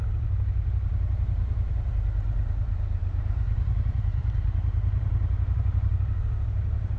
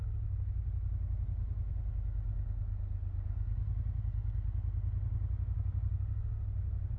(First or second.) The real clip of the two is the second